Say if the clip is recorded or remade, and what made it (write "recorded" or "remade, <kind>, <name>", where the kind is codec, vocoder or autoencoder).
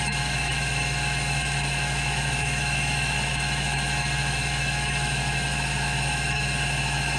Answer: remade, autoencoder, DAC-VAE